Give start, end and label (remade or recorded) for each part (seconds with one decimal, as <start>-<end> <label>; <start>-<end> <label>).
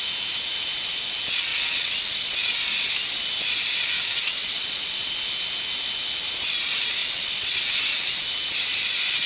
0.0-1.5 recorded; 1.5-2.3 remade; 2.3-4.1 recorded; 4.1-5.1 remade; 5.1-7.0 recorded; 7.0-8.1 remade; 8.1-9.3 recorded